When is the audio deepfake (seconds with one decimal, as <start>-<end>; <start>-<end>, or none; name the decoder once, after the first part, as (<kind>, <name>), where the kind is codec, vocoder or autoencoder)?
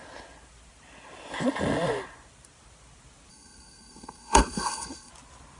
3.3-5.1 (codec, SNAC)